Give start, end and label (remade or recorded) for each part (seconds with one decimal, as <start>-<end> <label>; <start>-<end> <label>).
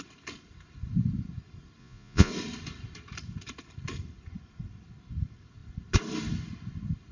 0.0-1.8 recorded; 1.8-2.3 remade; 2.3-7.1 recorded